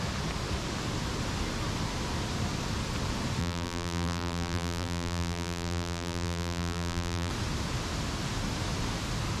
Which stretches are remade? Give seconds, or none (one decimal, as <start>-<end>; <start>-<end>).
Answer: 3.4-7.3